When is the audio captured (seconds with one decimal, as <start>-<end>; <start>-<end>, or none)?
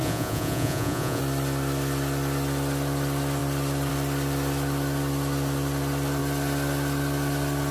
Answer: 1.2-7.7